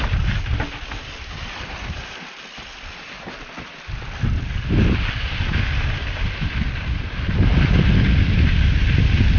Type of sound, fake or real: real